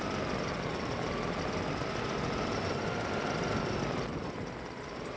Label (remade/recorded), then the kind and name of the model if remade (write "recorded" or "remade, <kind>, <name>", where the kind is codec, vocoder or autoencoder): recorded